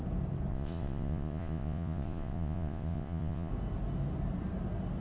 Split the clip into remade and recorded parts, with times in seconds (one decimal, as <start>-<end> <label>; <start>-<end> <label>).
0.0-0.5 recorded; 0.5-3.5 remade; 3.5-5.0 recorded